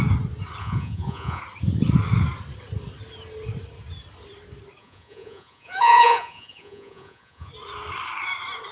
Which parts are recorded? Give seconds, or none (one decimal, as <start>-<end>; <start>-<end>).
0.0-0.6; 1.4-4.8; 7.5-8.7